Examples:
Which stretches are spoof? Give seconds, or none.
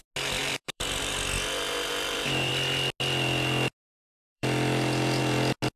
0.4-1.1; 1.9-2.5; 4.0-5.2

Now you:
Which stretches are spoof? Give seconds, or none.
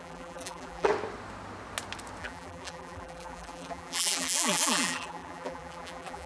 0.0-0.9; 2.2-6.3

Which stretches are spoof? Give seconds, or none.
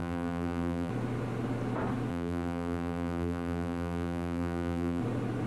0.0-0.9; 2.1-5.0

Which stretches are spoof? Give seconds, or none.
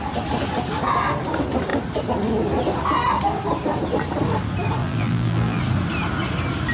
4.8-5.6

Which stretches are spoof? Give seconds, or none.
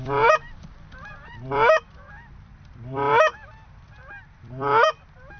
0.0-5.4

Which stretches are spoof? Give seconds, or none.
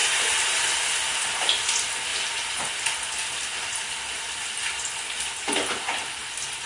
0.0-0.6; 2.1-2.6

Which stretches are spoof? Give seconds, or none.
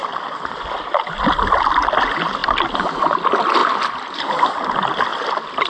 0.0-1.0; 2.4-3.0; 3.6-4.6; 5.1-5.7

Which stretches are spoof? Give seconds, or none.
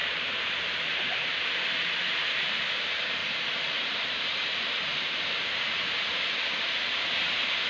0.0-7.7